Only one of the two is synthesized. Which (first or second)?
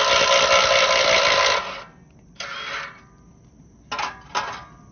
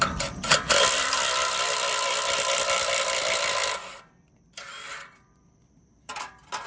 second